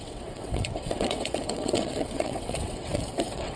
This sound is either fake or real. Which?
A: fake